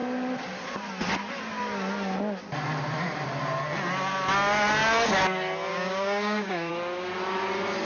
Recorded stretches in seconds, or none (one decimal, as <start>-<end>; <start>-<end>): 0.0-5.7; 6.7-7.9